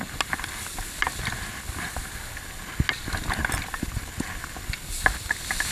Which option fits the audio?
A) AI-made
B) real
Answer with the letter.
B